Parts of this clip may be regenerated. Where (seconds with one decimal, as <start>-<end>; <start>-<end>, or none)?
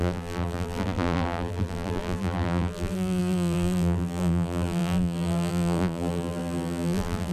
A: 0.0-7.3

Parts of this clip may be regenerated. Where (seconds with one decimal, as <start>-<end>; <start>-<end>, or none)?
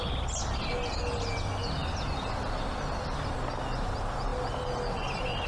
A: none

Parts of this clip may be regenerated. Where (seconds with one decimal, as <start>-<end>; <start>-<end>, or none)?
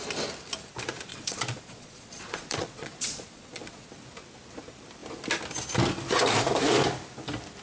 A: 1.1-3.9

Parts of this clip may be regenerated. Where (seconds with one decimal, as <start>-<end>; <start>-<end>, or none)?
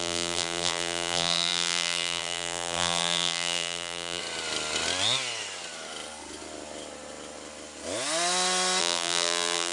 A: 0.0-4.2; 8.8-9.7